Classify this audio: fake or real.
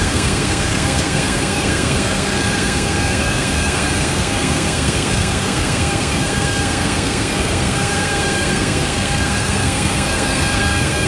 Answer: fake